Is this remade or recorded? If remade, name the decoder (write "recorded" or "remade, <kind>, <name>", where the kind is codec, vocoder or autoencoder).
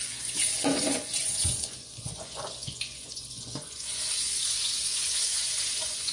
remade, vocoder, Vocos